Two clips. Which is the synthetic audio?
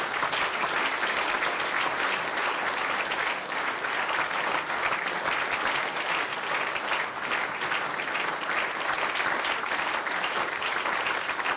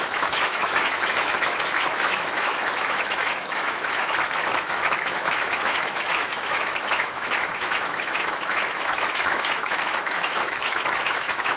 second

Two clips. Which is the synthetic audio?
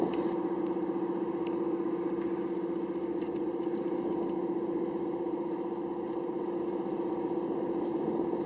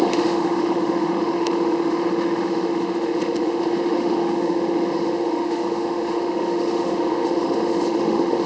second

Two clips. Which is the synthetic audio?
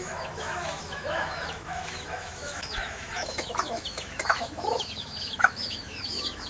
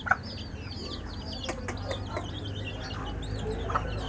first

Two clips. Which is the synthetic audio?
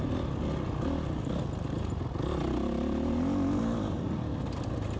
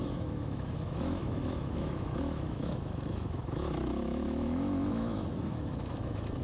second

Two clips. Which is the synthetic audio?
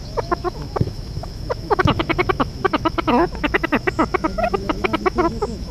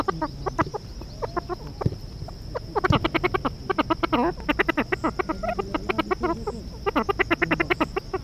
first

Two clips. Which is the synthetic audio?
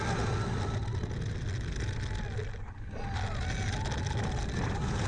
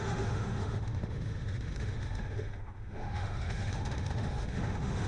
second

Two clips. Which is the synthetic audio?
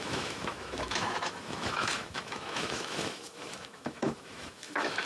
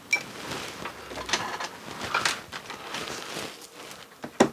first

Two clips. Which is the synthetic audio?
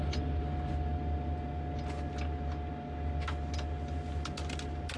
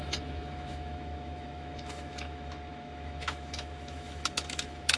second